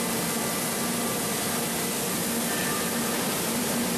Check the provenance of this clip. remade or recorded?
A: remade